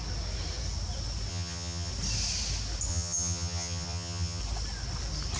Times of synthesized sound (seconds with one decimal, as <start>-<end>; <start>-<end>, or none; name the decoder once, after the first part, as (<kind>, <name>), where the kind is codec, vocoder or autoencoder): 1.3-1.9 (vocoder, HiFi-GAN); 2.9-4.4